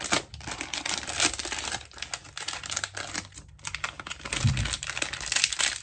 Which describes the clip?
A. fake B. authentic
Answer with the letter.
B